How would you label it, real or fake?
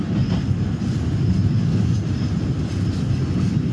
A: real